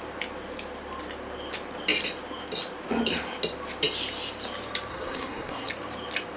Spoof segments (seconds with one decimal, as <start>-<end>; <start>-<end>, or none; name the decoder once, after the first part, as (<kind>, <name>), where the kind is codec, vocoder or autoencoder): 4.9-5.7 (codec, SNAC)